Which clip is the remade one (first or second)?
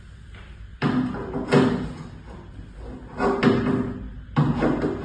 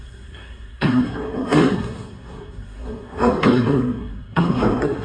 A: second